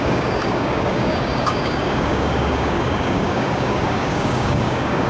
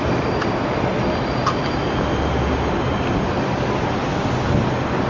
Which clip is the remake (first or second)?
first